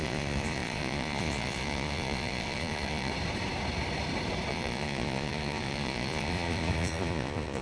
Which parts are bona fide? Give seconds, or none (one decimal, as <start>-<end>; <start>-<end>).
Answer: 3.1-4.5